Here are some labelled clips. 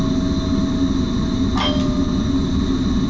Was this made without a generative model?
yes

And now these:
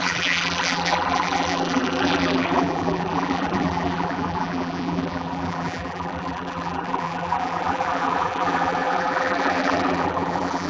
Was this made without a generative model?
no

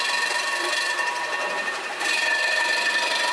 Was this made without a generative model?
no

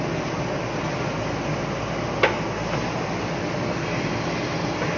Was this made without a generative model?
yes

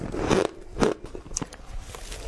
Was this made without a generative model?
yes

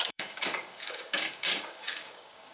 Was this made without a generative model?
no